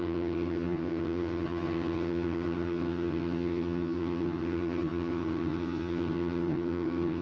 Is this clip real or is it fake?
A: fake